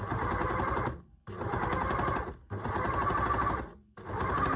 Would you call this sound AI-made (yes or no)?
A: no